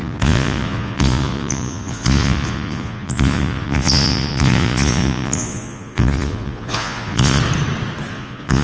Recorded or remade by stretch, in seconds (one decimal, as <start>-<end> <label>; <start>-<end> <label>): 0.0-7.4 remade; 7.4-8.1 recorded; 8.1-8.6 remade